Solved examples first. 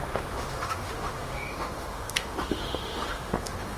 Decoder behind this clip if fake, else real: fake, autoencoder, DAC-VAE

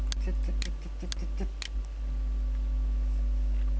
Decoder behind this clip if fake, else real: real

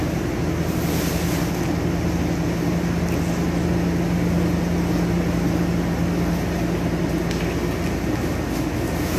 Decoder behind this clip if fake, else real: real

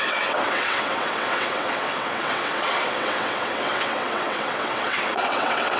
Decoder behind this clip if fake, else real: fake, vocoder, WaveNeXt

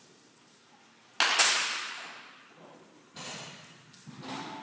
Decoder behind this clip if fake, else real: real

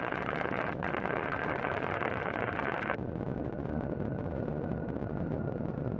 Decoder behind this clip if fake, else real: fake, vocoder, Vocos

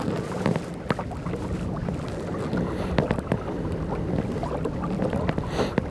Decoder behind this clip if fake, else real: real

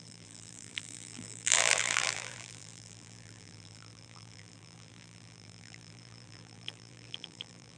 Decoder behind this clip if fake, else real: fake, vocoder, BigVGAN v2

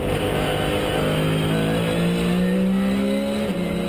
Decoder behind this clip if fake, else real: real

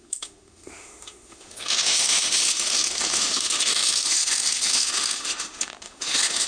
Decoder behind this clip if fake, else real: fake, autoencoder, DAC-VAE